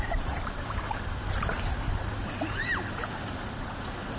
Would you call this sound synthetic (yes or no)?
yes